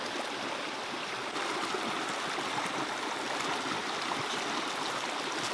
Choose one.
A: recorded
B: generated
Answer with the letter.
A